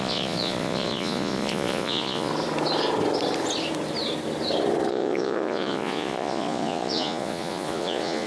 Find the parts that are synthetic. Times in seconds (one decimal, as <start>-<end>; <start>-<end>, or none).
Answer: 0.0-2.3; 4.9-8.3